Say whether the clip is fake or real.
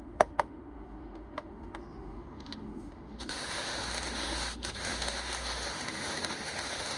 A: fake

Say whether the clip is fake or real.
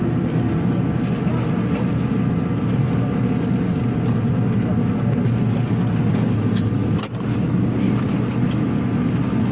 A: real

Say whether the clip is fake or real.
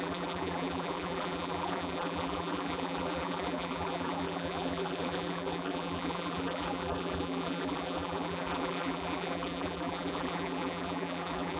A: fake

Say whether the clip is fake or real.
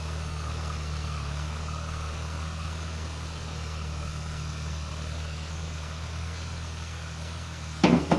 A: fake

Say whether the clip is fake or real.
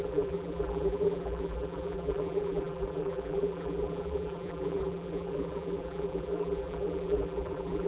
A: fake